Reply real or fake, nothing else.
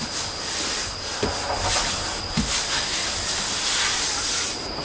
real